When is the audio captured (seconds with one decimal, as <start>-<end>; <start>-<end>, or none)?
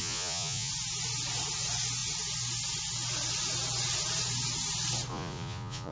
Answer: 0.7-5.1